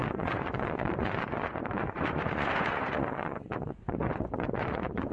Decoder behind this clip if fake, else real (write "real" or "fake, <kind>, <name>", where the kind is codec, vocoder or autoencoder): fake, vocoder, Vocos